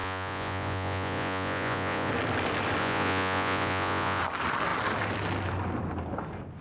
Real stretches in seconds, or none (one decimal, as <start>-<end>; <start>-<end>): 2.1-2.8; 4.2-6.6